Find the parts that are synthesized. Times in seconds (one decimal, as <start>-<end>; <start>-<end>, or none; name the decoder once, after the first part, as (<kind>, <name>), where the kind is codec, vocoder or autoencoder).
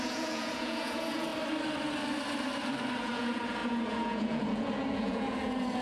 0.0-1.3 (vocoder, Vocos); 3.0-5.8